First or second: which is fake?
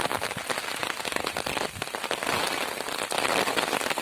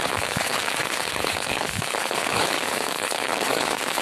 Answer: second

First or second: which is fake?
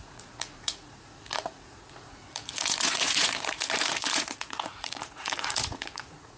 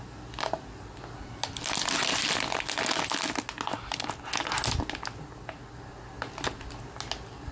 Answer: first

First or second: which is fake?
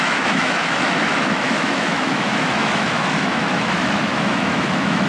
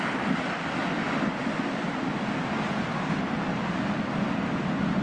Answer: first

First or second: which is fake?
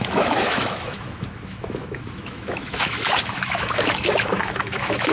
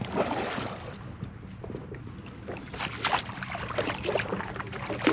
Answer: first